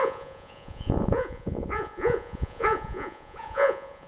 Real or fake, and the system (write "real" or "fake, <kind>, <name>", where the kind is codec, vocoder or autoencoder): fake, vocoder, Vocos